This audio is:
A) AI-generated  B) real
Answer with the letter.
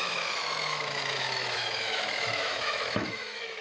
A